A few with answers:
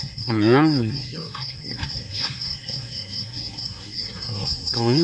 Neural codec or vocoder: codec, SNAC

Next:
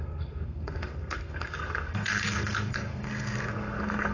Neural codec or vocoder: codec, SNAC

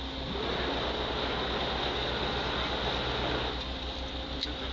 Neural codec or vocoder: none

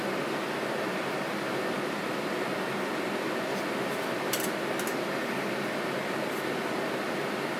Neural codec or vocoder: none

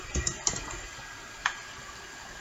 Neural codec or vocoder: none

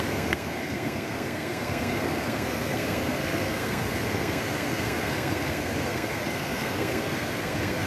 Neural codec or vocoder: codec, SNAC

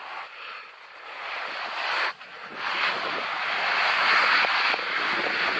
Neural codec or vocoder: none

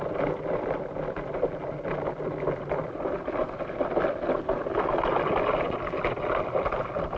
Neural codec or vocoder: none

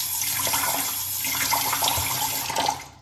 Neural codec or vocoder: none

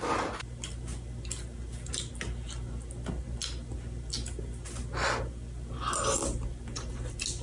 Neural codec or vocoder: none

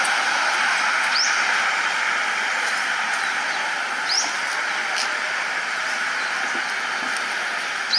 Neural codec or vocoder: none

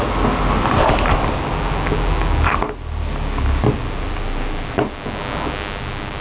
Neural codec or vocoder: none